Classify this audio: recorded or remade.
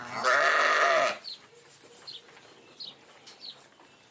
recorded